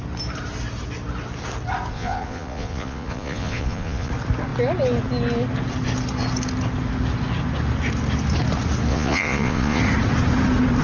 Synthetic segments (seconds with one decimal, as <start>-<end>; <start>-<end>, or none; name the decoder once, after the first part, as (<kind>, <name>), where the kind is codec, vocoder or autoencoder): 1.9-4.1 (vocoder, Vocos); 8.9-9.8